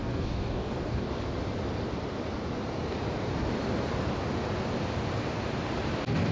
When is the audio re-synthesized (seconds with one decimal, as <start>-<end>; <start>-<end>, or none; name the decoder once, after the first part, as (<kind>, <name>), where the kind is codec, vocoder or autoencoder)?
0.0-1.1 (codec, DAC)